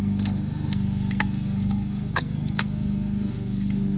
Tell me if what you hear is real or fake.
fake